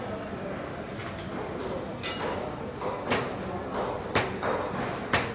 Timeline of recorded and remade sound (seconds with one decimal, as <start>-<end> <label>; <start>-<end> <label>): 0.0-5.3 recorded